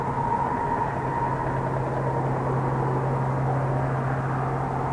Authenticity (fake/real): real